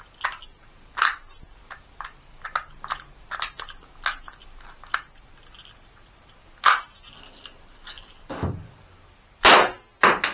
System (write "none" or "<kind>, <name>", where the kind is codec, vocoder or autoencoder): none